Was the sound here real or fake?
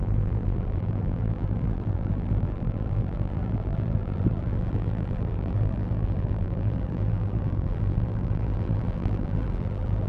fake